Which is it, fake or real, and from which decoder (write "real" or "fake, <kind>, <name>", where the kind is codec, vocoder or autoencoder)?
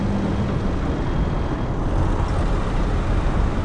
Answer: real